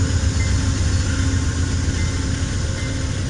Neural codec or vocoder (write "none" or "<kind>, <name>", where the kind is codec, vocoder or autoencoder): none